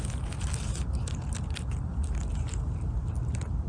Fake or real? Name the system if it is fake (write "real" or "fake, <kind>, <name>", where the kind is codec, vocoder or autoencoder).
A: real